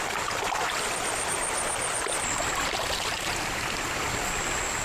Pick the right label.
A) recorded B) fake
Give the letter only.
A